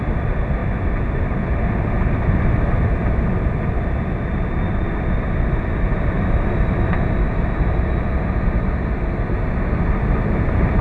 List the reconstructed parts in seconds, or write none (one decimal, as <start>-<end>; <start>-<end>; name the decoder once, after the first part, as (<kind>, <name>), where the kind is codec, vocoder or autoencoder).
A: none